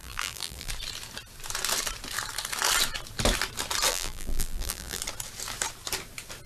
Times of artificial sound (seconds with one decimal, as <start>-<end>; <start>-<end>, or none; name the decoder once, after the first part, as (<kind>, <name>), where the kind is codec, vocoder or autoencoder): 0.0-0.7 (vocoder, BigVGAN v2); 3.9-5.0